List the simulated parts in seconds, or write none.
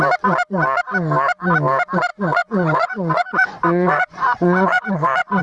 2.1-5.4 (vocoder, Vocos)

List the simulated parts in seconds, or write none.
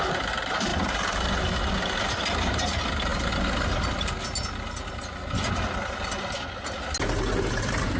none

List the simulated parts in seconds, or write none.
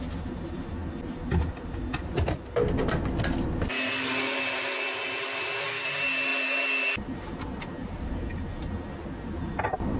none